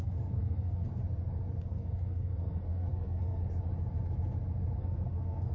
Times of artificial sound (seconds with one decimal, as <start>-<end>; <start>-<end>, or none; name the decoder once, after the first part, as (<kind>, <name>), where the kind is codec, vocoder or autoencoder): 0.0-0.9 (codec, SNAC); 1.6-3.4; 4.8-5.5